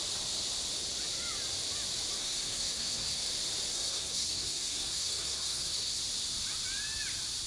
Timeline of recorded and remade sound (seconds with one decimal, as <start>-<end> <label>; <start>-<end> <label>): 0.0-2.2 recorded; 2.2-3.3 remade; 3.3-3.7 recorded; 3.7-6.0 remade; 6.0-7.5 recorded